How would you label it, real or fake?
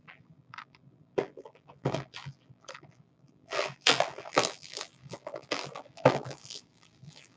fake